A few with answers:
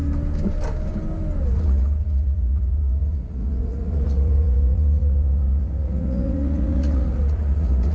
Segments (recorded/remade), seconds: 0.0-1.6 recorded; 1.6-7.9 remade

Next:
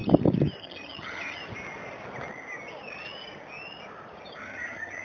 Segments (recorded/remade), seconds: 0.0-0.6 recorded; 0.6-1.4 remade; 1.4-4.4 recorded; 4.4-5.0 remade

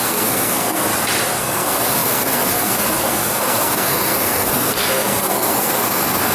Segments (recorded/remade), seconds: 0.0-0.9 remade; 0.9-1.4 recorded; 1.4-6.3 remade

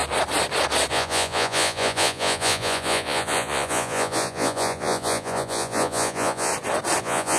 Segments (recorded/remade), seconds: 0.0-0.9 recorded; 0.9-6.5 remade; 6.5-7.0 recorded; 7.0-7.4 remade

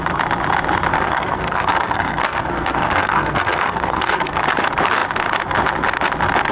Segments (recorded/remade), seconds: 0.0-0.9 recorded; 0.9-4.4 remade; 4.4-6.5 recorded